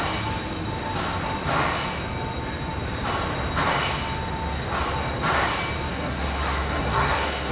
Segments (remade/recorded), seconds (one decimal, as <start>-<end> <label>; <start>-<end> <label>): 0.0-5.9 recorded; 5.9-7.5 remade